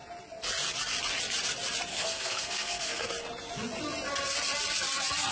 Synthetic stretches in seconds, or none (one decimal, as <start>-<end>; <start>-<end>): 1.9-3.1